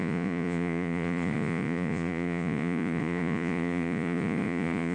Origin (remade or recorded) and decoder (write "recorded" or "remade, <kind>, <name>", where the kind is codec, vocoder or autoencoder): remade, vocoder, Vocos